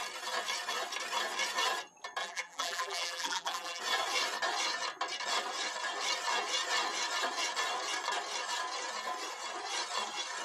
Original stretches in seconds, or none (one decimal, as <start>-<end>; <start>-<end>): 0.0-2.2; 3.8-10.4